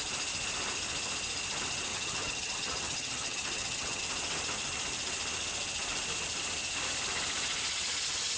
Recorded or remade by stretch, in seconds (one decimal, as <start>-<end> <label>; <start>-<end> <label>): 0.0-1.9 recorded; 1.9-4.0 remade; 4.0-8.4 recorded